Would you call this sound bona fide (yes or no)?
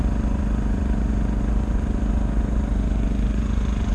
no